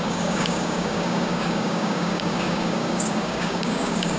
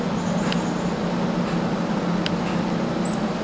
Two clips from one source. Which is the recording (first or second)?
second